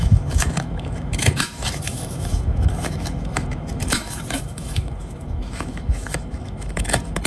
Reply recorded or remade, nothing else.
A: remade